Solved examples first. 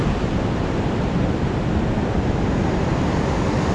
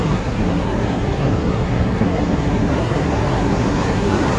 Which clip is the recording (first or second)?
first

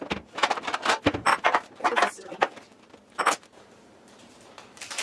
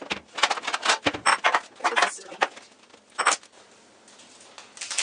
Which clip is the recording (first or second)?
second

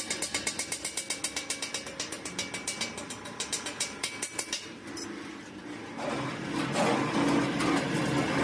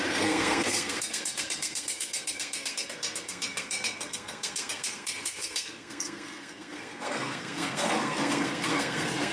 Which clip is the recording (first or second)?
first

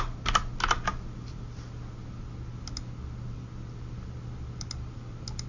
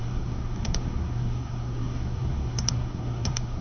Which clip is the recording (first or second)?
first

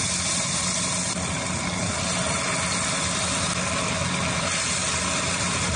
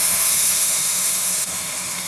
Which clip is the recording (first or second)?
first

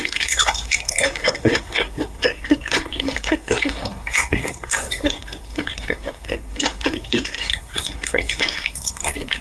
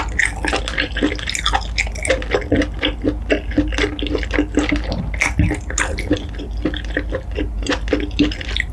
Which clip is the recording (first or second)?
second